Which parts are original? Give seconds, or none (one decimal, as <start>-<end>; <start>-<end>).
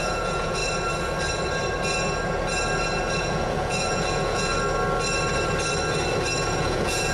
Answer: 0.6-3.2; 4.5-6.6